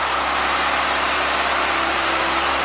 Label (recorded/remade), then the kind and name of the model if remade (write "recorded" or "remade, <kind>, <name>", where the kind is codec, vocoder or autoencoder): remade, vocoder, BigVGAN v2